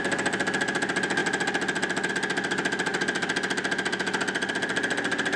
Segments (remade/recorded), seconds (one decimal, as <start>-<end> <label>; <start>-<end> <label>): 0.0-5.4 recorded